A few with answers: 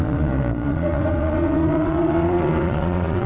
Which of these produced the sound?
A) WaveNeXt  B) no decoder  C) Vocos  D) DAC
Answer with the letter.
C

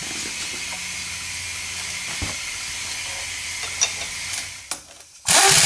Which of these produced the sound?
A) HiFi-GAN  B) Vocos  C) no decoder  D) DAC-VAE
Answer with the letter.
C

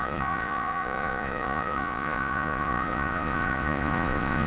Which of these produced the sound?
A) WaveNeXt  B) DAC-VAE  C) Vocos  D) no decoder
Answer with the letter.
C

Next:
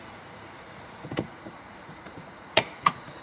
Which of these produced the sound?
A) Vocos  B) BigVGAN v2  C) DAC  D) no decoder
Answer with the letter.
A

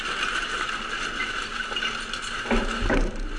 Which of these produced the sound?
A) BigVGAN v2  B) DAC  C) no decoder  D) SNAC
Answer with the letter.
C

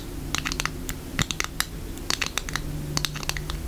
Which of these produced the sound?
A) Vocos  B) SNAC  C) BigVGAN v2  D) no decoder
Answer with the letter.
D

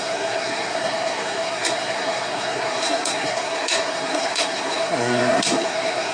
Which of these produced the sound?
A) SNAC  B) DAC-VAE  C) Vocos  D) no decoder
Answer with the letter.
A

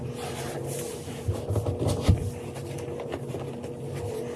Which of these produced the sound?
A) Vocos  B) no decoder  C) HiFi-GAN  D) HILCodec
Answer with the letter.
B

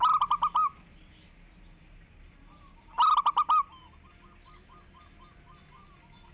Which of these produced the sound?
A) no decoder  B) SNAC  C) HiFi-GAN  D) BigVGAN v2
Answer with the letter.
A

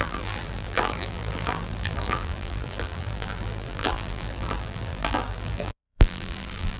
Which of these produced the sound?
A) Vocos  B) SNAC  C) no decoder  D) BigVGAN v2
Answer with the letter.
D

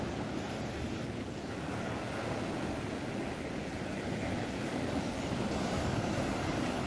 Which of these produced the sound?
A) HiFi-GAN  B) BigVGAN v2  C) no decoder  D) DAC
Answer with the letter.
D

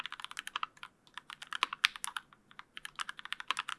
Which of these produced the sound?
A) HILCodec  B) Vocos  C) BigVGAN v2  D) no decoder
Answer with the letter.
D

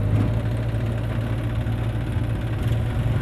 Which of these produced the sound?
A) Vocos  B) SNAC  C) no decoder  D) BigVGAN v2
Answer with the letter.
C